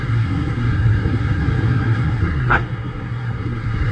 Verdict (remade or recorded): remade